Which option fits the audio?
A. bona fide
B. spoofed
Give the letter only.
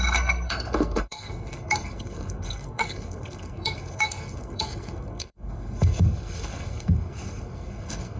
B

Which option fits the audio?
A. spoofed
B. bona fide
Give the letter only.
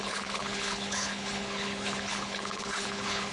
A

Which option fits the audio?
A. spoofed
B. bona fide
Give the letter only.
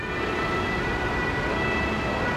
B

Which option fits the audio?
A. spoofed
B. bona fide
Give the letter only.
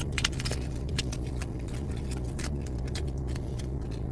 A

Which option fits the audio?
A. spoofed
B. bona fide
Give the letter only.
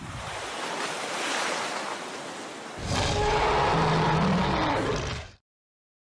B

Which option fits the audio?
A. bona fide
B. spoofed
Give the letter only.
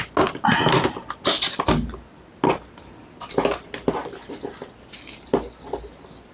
A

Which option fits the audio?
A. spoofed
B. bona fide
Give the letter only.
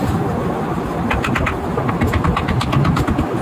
B